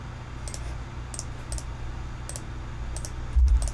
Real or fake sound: real